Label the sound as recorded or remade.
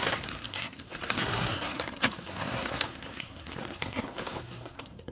remade